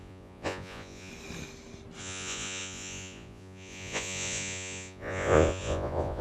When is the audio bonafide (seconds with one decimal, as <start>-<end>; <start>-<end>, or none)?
1.1-2.0